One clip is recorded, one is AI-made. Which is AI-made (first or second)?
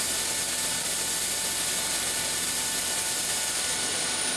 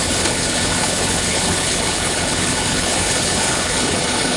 second